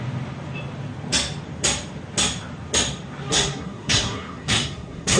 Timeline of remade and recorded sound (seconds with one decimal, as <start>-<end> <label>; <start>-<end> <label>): 0.0-3.3 recorded; 3.3-5.2 remade